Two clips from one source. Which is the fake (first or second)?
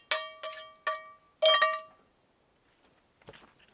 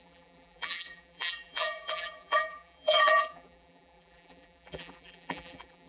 second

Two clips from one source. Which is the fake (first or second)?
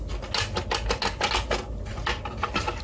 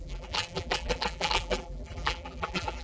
second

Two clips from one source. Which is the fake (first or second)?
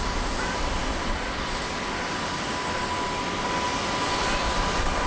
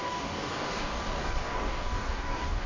second